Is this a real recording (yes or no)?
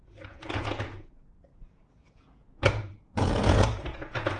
no